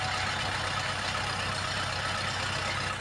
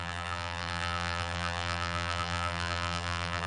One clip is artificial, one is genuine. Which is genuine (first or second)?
first